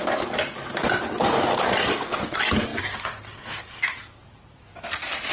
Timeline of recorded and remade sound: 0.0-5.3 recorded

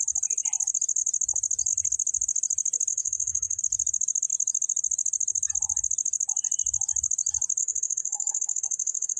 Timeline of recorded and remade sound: 0.0-2.9 recorded; 2.9-3.6 remade; 3.6-7.6 recorded; 7.6-9.2 remade

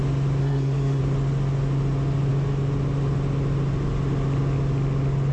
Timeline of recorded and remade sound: 0.0-0.4 recorded; 0.4-1.0 remade; 1.0-5.3 recorded

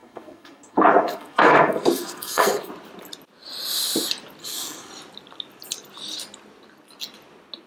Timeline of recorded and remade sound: 0.0-2.7 remade; 2.7-4.4 recorded; 4.4-4.9 remade; 4.9-7.7 recorded

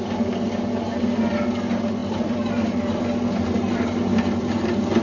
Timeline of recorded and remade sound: 0.0-5.0 recorded

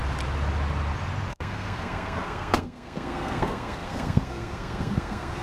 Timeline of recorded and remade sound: 0.0-1.3 recorded; 1.3-5.4 remade

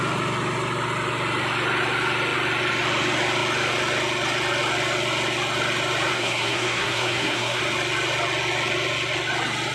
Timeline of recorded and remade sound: 0.0-6.1 recorded; 6.1-7.6 remade; 7.6-9.7 recorded

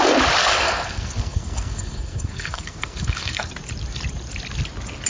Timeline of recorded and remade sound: 0.0-0.4 recorded; 0.4-3.5 remade; 3.5-5.1 recorded